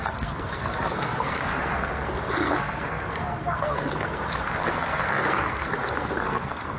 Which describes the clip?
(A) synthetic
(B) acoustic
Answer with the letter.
A